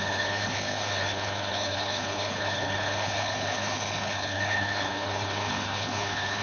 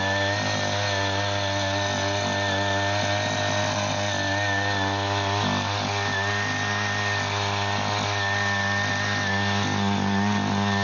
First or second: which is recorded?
second